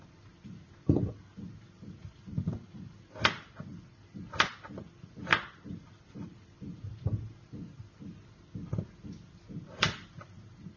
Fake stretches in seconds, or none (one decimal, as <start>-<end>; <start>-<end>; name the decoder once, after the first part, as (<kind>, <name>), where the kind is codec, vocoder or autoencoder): none